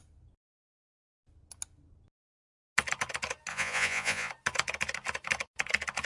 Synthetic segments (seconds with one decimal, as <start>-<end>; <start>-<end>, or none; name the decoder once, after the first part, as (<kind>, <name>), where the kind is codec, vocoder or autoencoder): 3.5-4.3 (vocoder, Vocos)